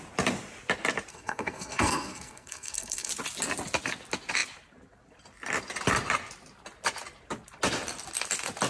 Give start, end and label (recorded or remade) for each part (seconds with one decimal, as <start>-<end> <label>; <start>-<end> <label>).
0.0-1.1 recorded; 1.1-3.1 remade; 3.1-8.7 recorded